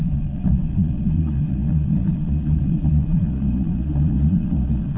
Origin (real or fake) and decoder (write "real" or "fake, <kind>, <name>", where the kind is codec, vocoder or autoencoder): fake, vocoder, Vocos